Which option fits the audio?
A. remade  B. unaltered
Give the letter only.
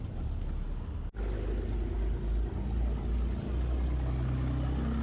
B